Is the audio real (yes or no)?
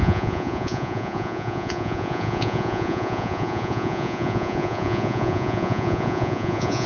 no